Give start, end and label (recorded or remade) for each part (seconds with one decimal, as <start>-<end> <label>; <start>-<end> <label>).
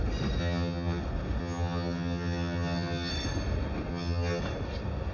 0.0-0.4 recorded; 0.4-1.0 remade; 1.0-1.4 recorded; 1.4-3.1 remade; 3.1-3.9 recorded; 3.9-4.4 remade; 4.4-5.1 recorded